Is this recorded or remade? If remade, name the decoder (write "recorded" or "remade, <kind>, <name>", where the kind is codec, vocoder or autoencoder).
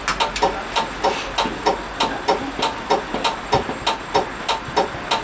recorded